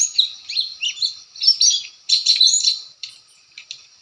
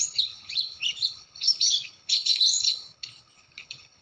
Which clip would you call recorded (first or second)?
first